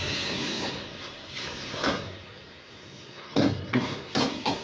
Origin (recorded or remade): remade